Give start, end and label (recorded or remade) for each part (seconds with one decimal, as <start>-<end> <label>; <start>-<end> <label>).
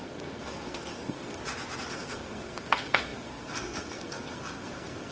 0.0-1.4 remade; 1.4-1.9 recorded; 1.9-5.1 remade